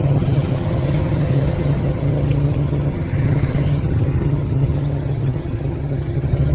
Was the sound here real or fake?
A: fake